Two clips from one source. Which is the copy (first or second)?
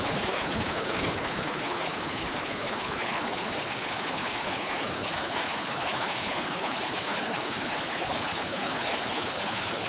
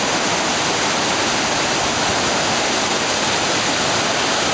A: first